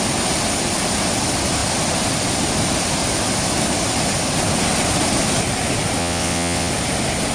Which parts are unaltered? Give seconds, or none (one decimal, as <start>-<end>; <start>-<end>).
0.0-6.0; 6.7-7.3